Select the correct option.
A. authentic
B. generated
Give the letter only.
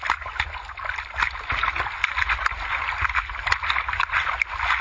A